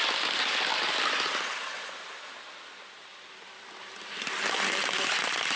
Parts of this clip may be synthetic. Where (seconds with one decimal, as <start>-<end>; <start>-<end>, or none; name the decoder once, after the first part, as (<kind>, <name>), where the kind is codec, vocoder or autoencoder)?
3.1-4.3 (vocoder, BigVGAN v2)